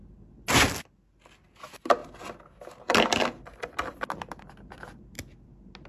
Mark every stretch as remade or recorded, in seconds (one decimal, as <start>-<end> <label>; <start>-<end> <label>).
0.0-5.9 recorded